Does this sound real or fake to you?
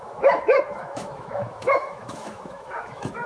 fake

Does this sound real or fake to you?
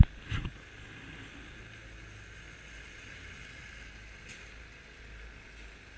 real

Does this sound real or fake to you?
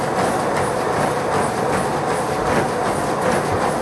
real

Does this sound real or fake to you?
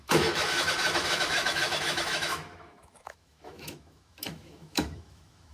fake